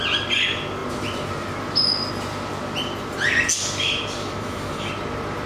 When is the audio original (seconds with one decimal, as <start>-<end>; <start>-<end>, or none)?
0.0-4.2; 4.9-5.5